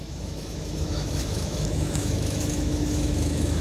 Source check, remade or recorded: remade